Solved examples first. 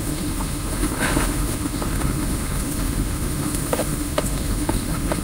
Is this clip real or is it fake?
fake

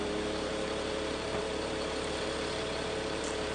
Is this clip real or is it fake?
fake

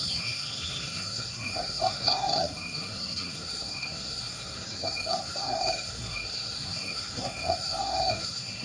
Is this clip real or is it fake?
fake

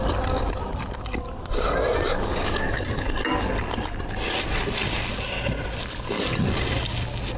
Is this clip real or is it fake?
real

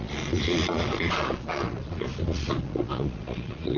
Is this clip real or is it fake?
fake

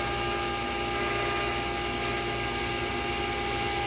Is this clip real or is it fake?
real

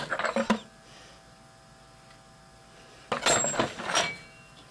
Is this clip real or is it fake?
real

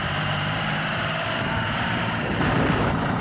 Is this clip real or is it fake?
fake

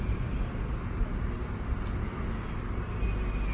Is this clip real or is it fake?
real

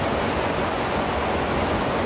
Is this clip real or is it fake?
fake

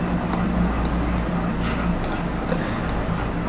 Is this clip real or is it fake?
real